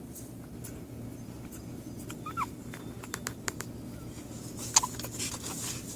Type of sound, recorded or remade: recorded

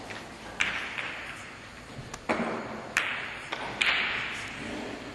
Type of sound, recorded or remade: recorded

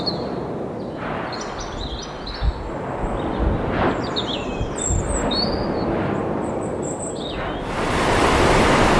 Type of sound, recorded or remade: recorded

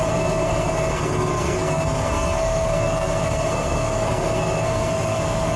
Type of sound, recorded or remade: remade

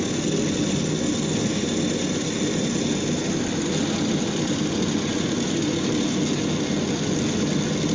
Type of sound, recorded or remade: recorded